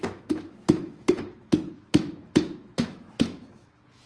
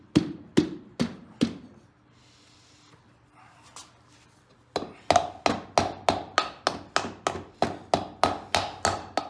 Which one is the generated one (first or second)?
first